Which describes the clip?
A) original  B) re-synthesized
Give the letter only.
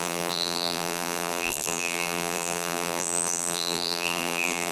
B